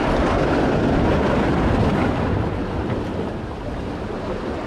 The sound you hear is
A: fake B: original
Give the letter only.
B